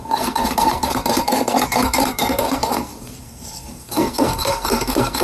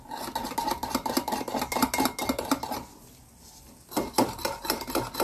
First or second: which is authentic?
second